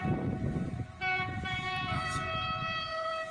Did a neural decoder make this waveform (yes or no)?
yes